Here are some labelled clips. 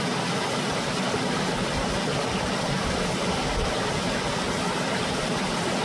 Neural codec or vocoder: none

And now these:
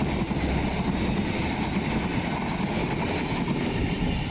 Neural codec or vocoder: none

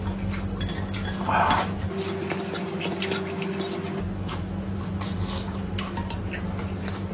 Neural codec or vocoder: none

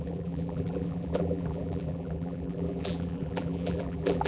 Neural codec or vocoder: vocoder, BigVGAN v2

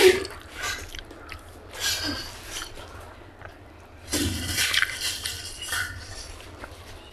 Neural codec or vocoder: vocoder, BigVGAN v2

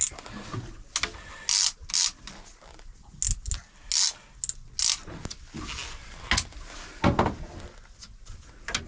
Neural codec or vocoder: none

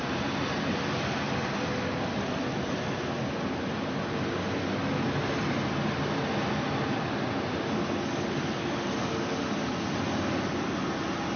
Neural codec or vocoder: none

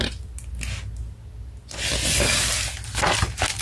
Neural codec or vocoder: none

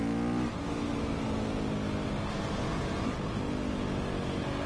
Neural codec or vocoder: none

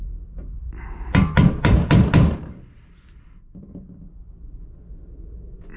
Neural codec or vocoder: none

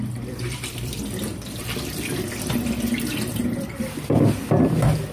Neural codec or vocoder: vocoder, BigVGAN v2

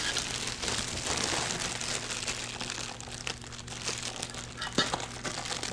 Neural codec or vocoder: none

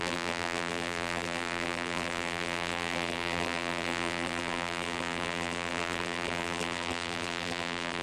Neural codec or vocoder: vocoder, BigVGAN v2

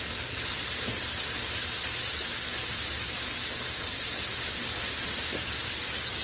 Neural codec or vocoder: none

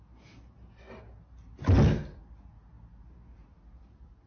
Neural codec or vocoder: none